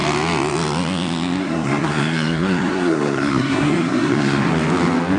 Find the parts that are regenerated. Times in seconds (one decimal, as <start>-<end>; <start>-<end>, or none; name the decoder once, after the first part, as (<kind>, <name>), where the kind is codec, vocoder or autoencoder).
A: 1.4-4.5 (codec, SNAC)